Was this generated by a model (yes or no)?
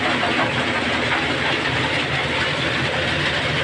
no